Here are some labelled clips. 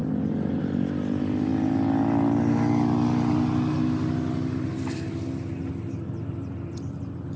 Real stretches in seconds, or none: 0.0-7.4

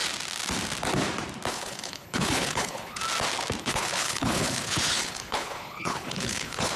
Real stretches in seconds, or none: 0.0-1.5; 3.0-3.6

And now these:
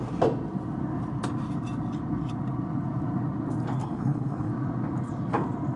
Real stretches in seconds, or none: 0.0-3.8; 4.5-5.8

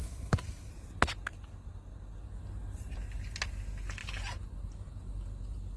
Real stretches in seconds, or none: 0.7-5.8

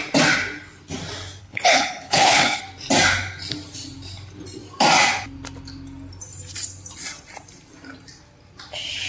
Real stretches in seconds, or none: 0.0-1.4; 2.6-9.1